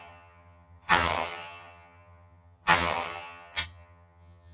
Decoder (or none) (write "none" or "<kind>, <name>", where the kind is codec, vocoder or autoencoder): vocoder, HiFi-GAN